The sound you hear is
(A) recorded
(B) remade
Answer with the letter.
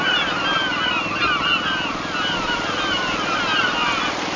A